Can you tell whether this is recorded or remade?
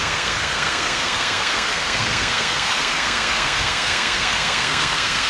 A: remade